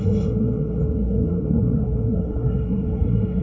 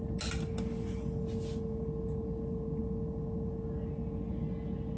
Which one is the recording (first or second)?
second